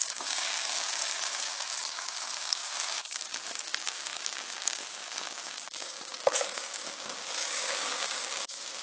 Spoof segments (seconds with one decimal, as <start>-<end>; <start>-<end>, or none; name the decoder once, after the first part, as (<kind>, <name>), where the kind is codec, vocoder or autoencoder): 0.0-8.8 (codec, DAC)